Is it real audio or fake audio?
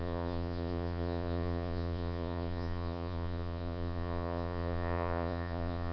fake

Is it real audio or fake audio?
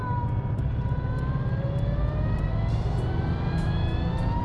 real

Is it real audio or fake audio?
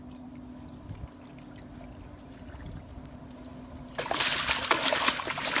real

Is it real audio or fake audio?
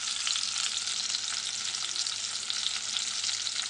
real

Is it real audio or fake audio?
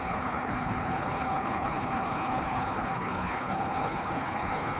fake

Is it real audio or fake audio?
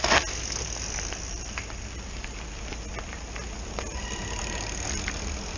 real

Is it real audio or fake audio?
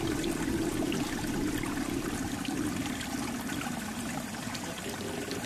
real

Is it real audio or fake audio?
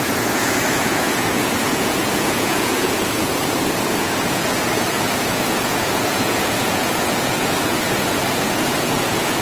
fake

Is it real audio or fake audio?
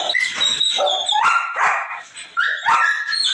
real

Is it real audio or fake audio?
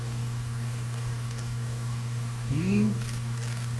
fake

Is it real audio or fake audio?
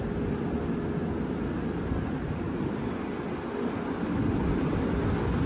real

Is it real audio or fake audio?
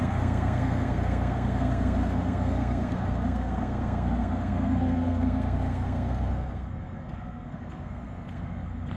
fake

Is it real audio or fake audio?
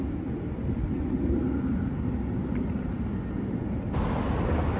real